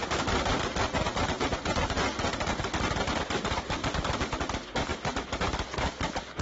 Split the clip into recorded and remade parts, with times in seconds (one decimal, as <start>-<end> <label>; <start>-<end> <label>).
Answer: 0.0-6.4 recorded